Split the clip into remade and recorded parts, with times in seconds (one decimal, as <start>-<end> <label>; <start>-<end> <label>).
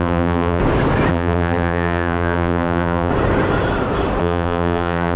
0.0-0.6 remade; 0.6-1.1 recorded; 1.1-3.1 remade; 3.1-4.2 recorded; 4.2-5.2 remade